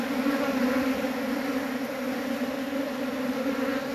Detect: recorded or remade remade